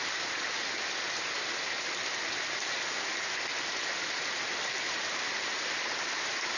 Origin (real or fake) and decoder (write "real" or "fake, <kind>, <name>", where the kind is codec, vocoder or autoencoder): real